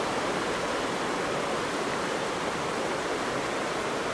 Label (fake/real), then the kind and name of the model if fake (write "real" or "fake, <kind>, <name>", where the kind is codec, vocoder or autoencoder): fake, vocoder, BigVGAN v2